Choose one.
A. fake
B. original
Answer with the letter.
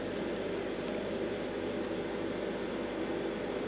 B